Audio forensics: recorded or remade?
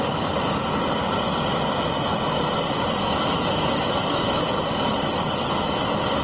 recorded